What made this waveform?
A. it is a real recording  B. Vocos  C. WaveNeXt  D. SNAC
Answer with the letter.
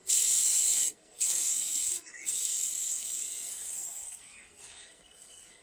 D